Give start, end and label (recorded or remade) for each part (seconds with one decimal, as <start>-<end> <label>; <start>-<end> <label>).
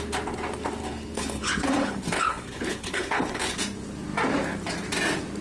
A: 0.0-0.8 recorded; 0.8-3.6 remade; 3.6-5.4 recorded